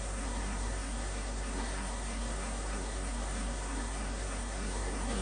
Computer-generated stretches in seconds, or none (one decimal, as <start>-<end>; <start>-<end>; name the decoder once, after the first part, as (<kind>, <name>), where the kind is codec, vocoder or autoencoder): 0.0-5.2 (codec, SNAC)